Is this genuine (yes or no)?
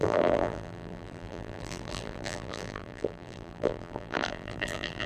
no